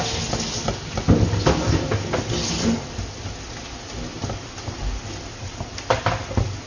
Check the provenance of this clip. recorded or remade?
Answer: recorded